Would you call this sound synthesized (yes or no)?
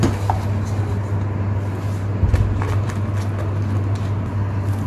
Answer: no